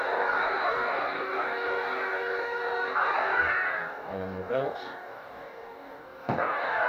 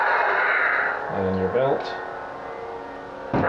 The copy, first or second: first